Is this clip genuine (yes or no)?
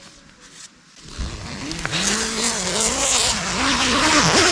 yes